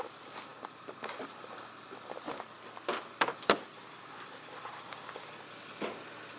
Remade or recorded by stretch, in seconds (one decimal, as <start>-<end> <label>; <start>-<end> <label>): 0.0-6.4 recorded